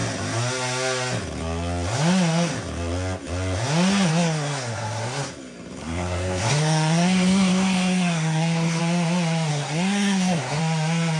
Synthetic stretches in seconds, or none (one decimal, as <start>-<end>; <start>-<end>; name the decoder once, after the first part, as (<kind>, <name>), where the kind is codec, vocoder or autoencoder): 4.1-5.3 (codec, SNAC); 5.8-8.8; 9.5-10.6